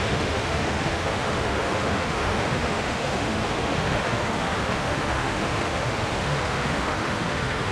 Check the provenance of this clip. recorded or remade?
remade